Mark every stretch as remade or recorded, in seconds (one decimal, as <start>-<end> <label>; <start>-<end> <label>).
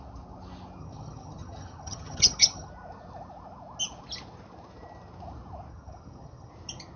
0.0-0.8 recorded; 0.8-2.7 remade; 2.7-5.7 recorded; 5.7-6.5 remade; 6.5-7.0 recorded